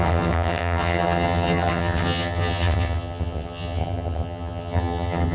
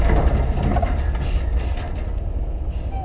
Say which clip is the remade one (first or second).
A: first